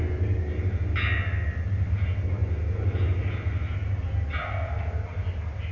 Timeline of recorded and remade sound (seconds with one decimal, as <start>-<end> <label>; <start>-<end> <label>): 0.0-5.7 recorded